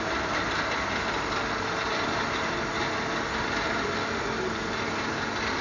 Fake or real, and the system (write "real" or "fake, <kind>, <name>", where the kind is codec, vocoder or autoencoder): real